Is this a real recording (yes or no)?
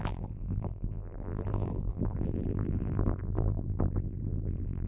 no